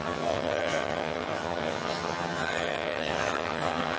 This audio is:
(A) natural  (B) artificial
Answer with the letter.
B